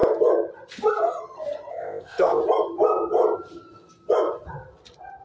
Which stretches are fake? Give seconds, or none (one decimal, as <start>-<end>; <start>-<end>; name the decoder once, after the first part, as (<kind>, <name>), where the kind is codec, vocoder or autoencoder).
1.7-2.4 (codec, ZipCodec)

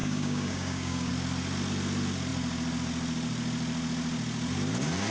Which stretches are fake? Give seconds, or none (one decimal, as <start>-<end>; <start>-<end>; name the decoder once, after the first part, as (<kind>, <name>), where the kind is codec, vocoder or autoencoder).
0.0-1.1 (codec, DAC)